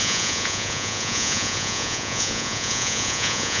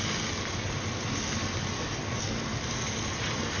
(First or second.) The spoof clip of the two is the first